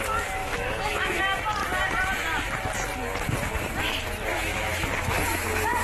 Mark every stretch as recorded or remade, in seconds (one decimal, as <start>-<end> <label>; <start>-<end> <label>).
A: 0.0-0.4 recorded; 0.4-1.2 remade; 1.2-4.3 recorded; 4.3-4.9 remade; 4.9-5.8 recorded